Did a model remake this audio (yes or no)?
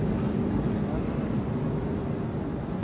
no